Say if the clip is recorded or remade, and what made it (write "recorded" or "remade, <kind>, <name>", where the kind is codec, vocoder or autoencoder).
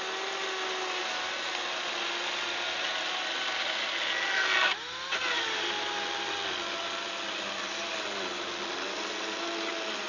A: recorded